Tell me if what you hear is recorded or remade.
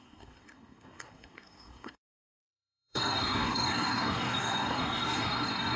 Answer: remade